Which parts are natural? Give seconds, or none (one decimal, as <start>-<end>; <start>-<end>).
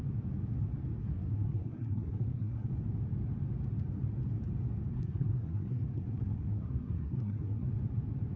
0.0-1.0; 2.7-4.9; 7.7-8.4